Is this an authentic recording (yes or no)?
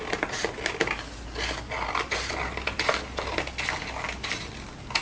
yes